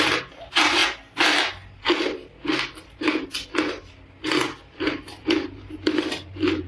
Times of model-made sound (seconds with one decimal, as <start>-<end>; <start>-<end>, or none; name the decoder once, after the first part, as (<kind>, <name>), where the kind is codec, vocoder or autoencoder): 0.0-0.8 (vocoder, BigVGAN v2); 4.8-6.7